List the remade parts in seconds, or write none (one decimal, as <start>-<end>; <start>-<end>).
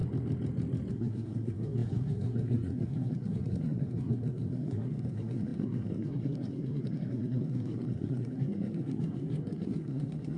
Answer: 0.9-10.4